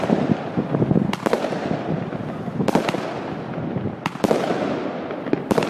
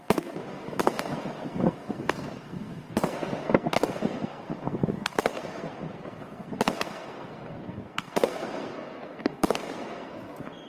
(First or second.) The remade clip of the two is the second